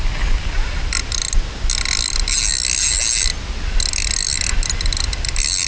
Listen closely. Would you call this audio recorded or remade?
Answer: recorded